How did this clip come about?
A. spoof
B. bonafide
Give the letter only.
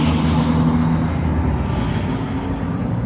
B